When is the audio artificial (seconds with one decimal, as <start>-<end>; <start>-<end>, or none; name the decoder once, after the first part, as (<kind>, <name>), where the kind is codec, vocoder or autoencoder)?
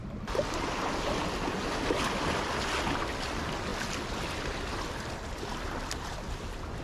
none